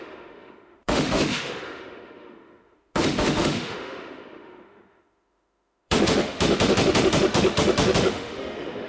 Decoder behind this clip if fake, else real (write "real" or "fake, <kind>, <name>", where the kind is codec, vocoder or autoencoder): fake, autoencoder, DAC-VAE